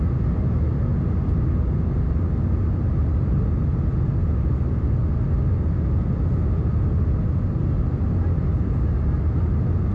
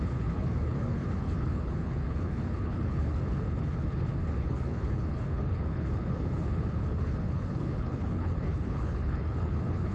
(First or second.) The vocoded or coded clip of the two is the second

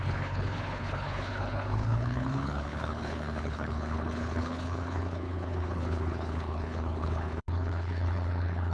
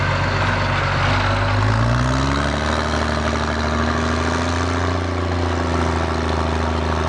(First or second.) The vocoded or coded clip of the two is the first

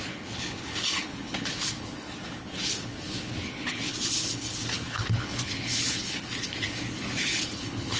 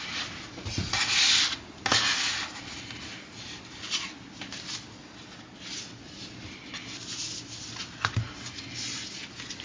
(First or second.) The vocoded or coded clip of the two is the first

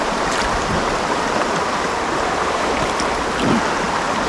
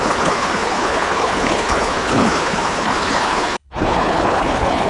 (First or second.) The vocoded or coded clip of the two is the second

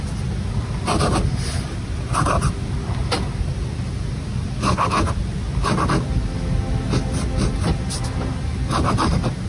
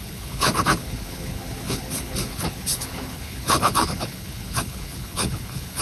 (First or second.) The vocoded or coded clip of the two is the second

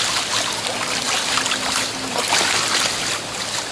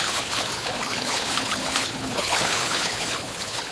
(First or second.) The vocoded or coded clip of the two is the second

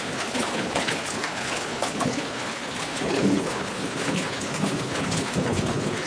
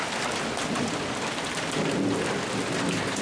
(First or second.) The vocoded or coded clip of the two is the first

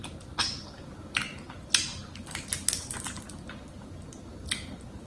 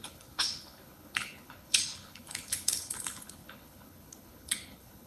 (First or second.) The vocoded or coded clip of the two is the second